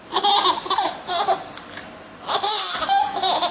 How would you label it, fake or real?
real